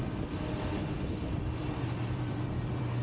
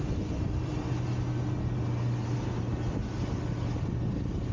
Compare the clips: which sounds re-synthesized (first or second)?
first